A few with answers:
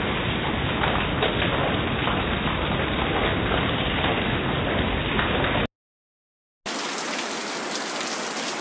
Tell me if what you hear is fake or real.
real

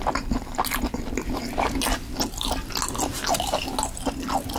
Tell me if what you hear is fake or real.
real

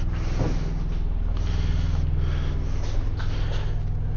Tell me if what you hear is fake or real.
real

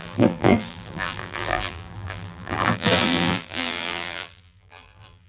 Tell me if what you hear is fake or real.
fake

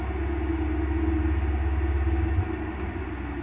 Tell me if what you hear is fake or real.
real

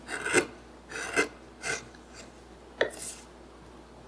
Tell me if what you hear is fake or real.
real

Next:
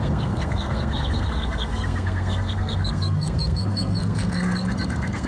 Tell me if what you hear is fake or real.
fake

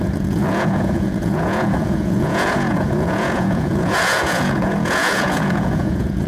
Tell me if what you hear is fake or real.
fake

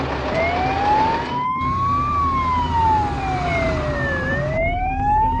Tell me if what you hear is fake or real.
real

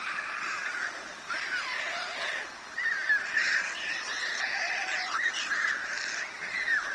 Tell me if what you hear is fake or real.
real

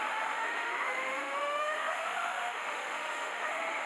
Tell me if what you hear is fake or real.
fake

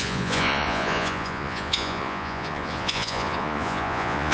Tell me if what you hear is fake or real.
fake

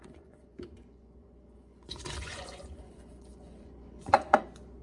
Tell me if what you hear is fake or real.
fake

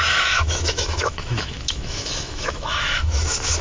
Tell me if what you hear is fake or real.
fake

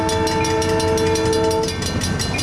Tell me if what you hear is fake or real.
real